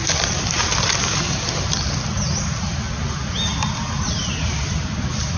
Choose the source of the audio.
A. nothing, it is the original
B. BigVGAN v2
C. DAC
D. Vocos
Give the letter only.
A